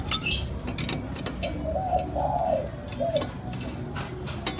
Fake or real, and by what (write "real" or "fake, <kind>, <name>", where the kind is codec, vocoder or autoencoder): real